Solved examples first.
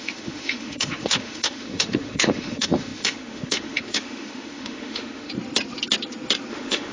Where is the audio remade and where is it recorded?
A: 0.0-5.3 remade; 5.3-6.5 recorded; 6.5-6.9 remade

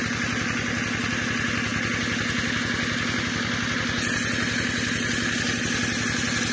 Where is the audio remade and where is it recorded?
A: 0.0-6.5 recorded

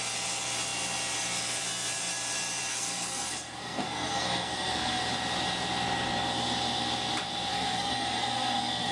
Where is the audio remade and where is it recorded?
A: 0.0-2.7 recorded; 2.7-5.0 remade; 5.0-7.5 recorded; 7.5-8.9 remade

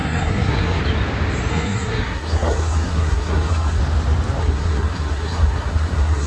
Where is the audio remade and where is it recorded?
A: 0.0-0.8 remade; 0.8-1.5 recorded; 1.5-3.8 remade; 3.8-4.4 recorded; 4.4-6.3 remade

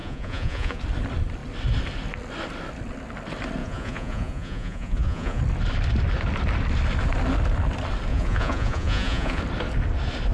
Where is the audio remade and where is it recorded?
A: 0.0-0.8 remade; 0.8-3.6 recorded; 3.6-5.4 remade; 5.4-8.1 recorded; 8.1-9.4 remade; 9.4-10.3 recorded

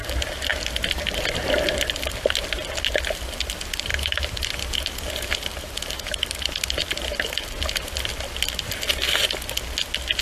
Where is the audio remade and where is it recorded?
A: 0.0-3.9 recorded; 3.9-5.1 remade; 5.1-5.5 recorded; 5.5-6.6 remade; 6.6-10.2 recorded

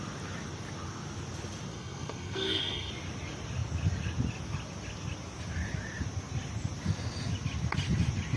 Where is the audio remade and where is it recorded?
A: 0.0-1.7 recorded; 1.7-2.9 remade; 2.9-8.4 recorded